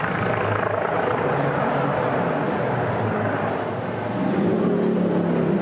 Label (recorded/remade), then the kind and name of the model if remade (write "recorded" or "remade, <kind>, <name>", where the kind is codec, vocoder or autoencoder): recorded